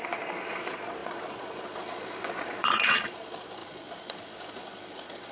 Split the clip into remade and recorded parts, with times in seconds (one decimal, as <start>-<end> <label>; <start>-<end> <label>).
0.0-5.3 remade